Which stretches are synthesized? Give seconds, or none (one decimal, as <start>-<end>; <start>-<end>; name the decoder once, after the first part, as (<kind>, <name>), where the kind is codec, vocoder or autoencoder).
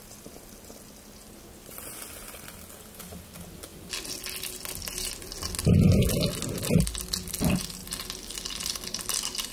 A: none